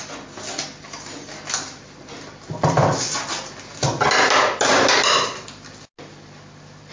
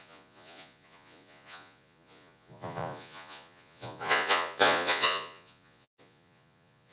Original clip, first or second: first